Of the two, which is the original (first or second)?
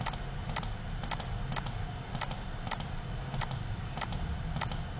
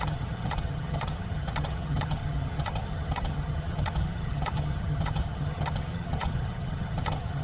first